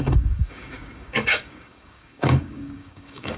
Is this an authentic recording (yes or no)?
no